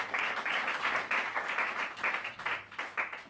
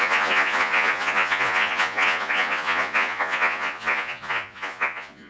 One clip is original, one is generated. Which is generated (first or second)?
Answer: second